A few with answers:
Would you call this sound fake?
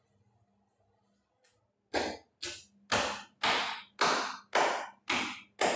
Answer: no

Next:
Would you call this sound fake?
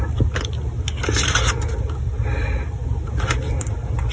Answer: no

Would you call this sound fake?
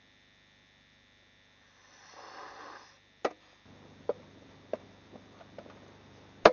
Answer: no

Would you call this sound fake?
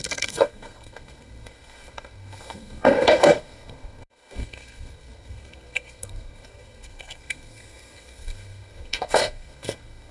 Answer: yes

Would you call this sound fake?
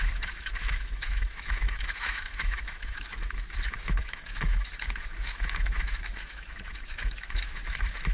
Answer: yes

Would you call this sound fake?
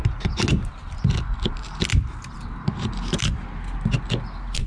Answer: no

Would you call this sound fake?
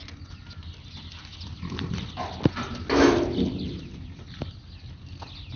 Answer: no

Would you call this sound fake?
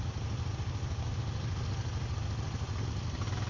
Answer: no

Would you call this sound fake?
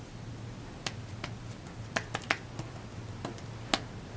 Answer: no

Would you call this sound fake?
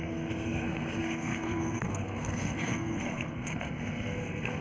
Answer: yes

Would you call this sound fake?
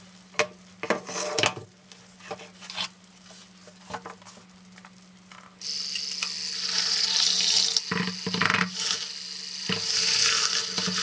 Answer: no